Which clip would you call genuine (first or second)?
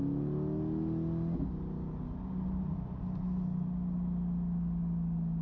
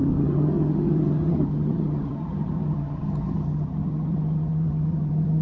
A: first